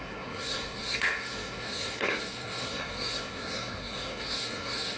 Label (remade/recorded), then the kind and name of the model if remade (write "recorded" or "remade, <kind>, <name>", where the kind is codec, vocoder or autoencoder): remade, codec, SNAC